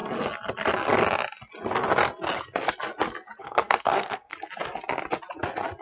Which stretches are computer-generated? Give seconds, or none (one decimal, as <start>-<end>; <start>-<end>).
3.4-4.3